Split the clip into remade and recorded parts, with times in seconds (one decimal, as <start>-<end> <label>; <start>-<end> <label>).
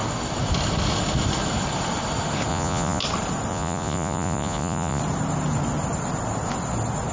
0.0-2.5 recorded; 2.5-3.0 remade; 3.0-3.5 recorded; 3.5-5.0 remade; 5.0-7.1 recorded